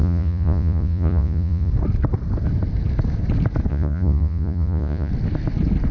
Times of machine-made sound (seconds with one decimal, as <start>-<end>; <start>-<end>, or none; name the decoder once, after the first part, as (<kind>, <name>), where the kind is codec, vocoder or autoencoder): 0.0-1.7 (vocoder, Vocos); 3.7-5.1